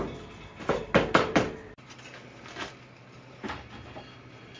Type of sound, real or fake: real